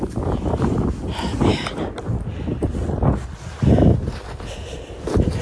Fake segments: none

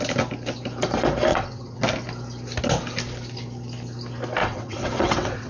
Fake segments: 1.3-1.8 (vocoder, WaveNeXt); 4.4-5.5

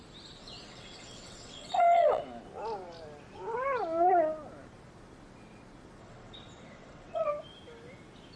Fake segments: 0.4-2.2 (vocoder, WaveNeXt); 6.0-7.3

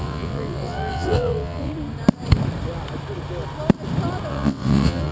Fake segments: 0.0-1.7 (vocoder, WaveNeXt); 4.3-5.1

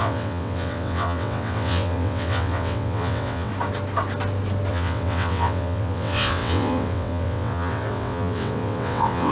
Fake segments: 0.0-3.5 (vocoder, WaveNeXt); 4.7-9.3

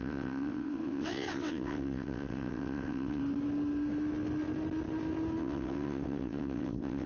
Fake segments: 0.0-3.2 (vocoder, WaveNeXt); 5.4-7.1